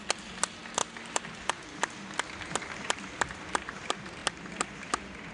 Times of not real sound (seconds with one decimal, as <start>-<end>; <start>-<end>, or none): none